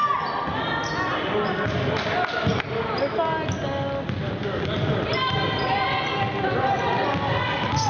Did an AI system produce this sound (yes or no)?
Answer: no